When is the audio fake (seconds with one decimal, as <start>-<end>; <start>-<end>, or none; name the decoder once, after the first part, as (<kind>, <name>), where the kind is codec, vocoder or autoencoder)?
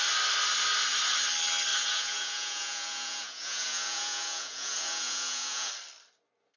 1.7-5.7 (vocoder, Vocos)